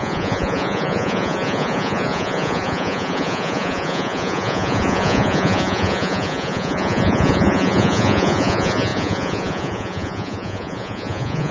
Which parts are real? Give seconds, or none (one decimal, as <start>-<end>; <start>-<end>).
none